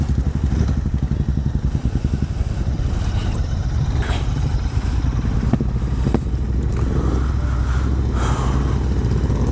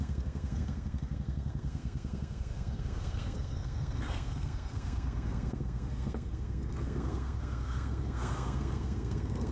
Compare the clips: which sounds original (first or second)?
first